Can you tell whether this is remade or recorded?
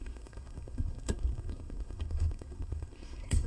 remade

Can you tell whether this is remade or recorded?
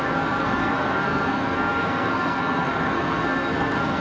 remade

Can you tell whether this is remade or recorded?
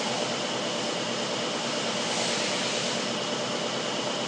recorded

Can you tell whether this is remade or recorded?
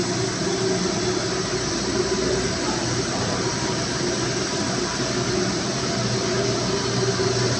recorded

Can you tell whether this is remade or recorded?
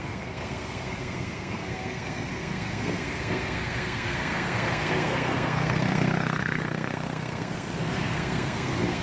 remade